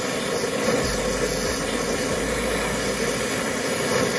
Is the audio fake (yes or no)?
no